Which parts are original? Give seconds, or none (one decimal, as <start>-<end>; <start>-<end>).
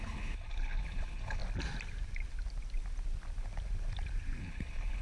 1.4-4.4